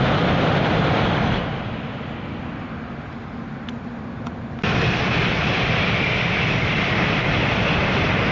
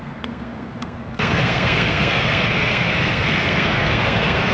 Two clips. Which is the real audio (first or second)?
first